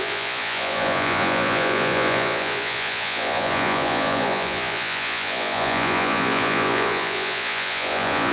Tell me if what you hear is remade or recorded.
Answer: remade